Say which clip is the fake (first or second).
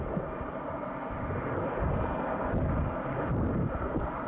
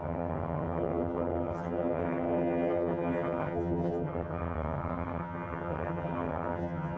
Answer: second